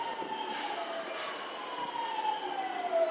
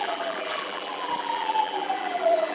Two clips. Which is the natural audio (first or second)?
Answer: first